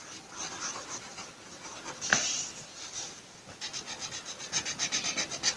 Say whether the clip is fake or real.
real